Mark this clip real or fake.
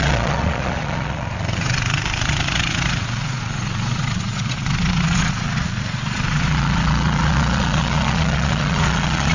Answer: fake